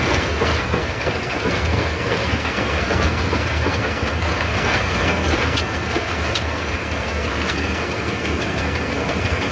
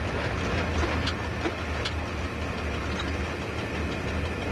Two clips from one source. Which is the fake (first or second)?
first